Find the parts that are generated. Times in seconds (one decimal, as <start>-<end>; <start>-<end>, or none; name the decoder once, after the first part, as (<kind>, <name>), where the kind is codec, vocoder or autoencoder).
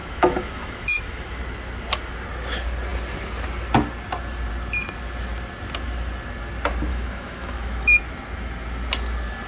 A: 0.0-1.4 (autoencoder, DAC-VAE); 6.9-8.0